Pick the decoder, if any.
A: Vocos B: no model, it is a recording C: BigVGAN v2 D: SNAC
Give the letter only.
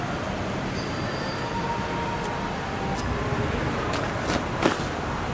B